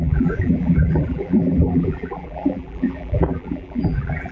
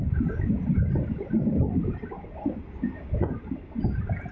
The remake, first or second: first